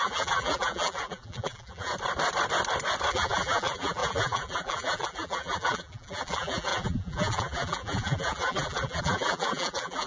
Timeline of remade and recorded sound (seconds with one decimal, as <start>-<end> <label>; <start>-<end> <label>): 0.0-1.9 remade; 1.9-3.1 recorded; 3.1-10.1 remade